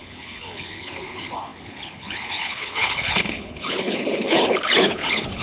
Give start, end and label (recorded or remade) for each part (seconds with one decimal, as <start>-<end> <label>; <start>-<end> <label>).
0.0-5.4 remade